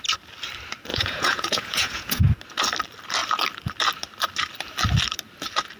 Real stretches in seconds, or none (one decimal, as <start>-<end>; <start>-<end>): 0.0-0.9; 2.2-5.8